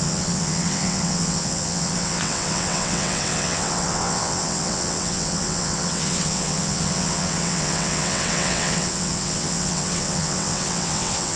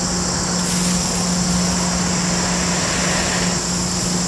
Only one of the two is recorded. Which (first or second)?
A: second